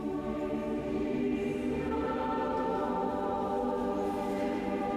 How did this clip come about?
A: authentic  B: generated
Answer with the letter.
A